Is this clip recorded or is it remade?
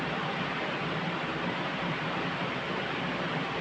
recorded